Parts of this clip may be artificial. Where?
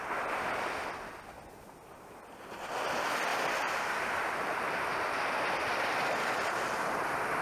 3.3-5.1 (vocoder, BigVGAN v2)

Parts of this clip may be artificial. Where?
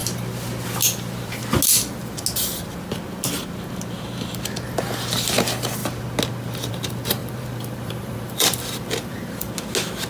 7.2-9.5 (vocoder, BigVGAN v2)